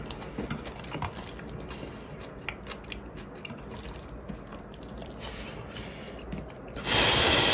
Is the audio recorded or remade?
recorded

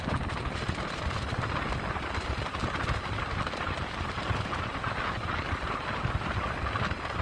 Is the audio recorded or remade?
recorded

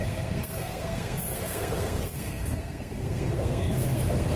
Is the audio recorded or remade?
remade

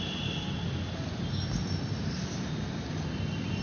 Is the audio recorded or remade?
recorded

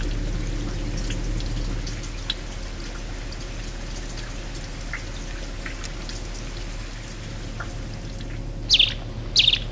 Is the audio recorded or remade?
recorded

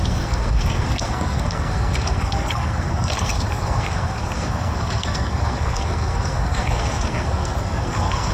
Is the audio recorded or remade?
remade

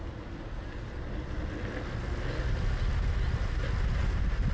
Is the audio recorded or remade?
recorded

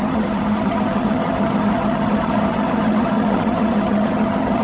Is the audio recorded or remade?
remade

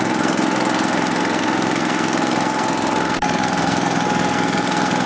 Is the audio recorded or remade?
remade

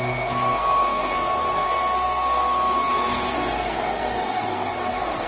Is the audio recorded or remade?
remade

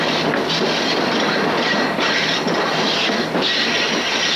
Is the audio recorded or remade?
recorded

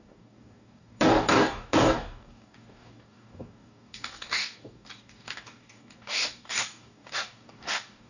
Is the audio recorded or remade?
remade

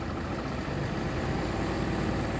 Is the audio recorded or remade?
recorded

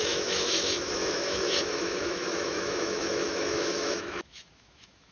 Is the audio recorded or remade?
remade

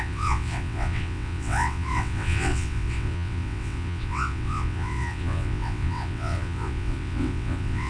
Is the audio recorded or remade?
remade